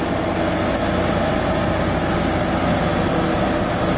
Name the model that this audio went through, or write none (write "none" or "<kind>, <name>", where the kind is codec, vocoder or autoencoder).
none